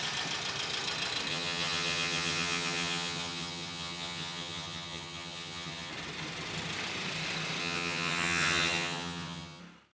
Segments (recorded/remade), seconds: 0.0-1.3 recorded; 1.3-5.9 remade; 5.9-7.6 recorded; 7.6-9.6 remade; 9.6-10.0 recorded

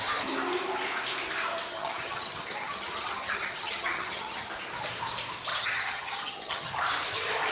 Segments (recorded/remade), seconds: 0.0-1.7 recorded; 1.7-4.5 remade; 4.5-5.5 recorded; 5.5-6.7 remade; 6.7-7.5 recorded

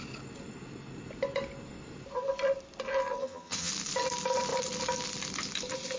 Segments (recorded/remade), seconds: 0.0-3.2 recorded; 3.2-3.7 remade; 3.7-6.0 recorded